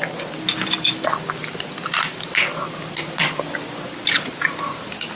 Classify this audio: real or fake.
real